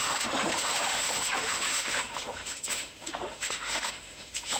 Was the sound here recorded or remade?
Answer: remade